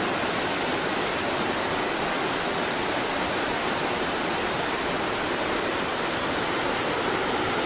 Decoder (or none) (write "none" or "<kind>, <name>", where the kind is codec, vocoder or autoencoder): none